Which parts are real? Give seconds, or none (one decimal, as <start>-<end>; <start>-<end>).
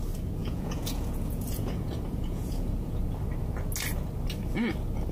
0.0-0.4; 2.9-5.1